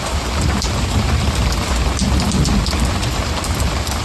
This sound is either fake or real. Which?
real